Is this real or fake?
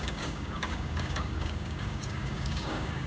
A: fake